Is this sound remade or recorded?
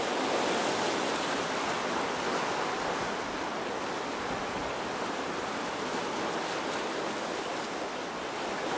recorded